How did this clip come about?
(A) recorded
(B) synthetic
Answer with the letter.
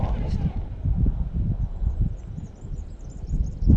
A